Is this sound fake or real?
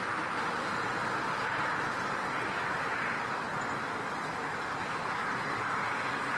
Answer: real